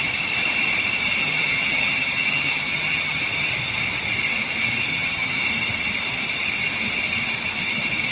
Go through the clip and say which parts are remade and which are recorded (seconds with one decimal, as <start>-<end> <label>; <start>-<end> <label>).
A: 0.0-1.2 recorded; 1.2-3.2 remade; 3.2-4.9 recorded; 4.9-5.4 remade; 5.4-8.1 recorded